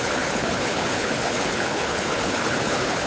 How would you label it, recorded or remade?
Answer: remade